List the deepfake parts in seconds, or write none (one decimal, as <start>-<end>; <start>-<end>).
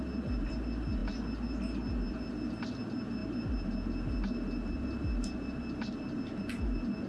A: none